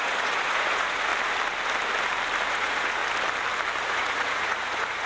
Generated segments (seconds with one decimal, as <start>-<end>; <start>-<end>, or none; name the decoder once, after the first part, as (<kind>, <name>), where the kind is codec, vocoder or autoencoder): 0.0-1.1 (vocoder, Vocos); 2.5-3.0; 3.9-5.1